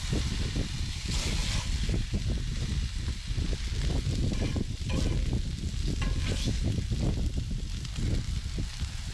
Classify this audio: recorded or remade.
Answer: recorded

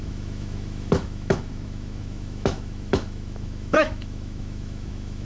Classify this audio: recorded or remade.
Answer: remade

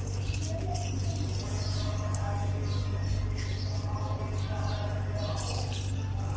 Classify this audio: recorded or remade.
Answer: recorded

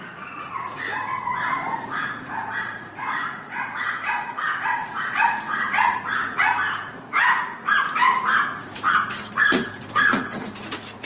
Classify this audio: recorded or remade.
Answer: remade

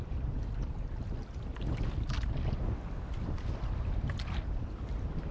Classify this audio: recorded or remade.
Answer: recorded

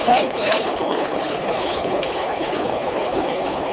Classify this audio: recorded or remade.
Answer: remade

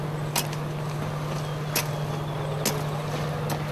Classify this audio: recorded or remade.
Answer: recorded